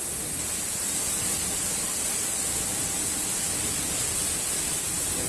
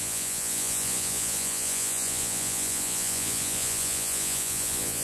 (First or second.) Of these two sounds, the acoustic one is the first